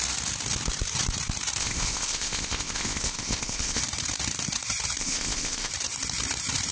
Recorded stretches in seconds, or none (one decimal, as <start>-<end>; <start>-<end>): 0.0-1.6; 3.8-5.0; 5.7-6.7